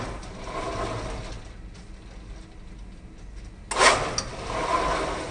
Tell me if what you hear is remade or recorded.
recorded